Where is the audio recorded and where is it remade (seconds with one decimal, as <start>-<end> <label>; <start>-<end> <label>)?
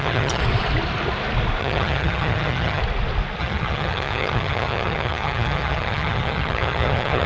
0.0-0.4 remade; 0.4-1.6 recorded; 1.6-2.8 remade; 2.8-3.4 recorded; 3.4-7.3 remade